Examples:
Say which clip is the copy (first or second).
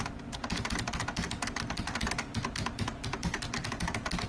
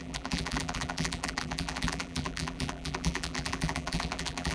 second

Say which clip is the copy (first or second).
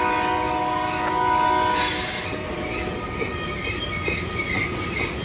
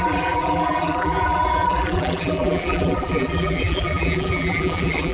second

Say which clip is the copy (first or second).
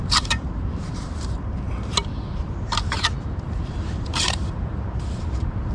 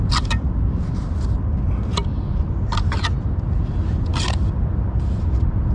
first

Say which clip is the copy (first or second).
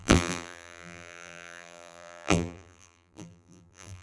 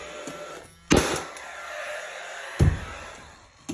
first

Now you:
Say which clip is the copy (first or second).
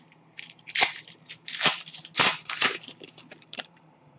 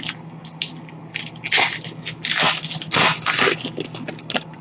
first